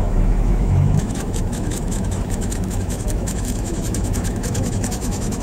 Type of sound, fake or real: fake